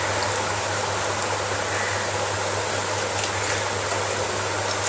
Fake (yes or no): no